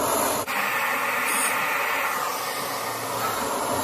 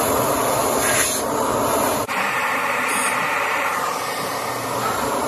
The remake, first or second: second